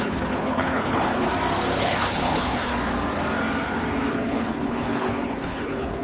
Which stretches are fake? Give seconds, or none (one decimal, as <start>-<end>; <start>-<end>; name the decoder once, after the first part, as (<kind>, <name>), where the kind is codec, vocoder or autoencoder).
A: 0.0-1.3 (codec, HILCodec); 1.8-2.7; 4.1-6.0